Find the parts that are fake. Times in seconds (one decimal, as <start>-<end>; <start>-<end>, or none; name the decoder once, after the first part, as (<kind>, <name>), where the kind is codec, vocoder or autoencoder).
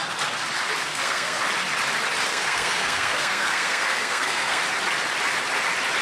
0.9-1.4 (codec, SNAC); 2.3-4.6